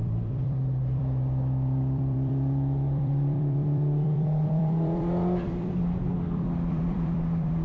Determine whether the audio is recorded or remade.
remade